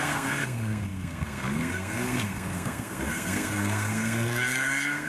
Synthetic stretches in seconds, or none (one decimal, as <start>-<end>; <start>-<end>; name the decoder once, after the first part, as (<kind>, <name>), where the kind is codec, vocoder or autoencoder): 0.0-5.1 (codec, SNAC)